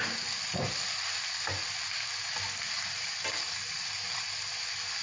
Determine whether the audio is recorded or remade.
recorded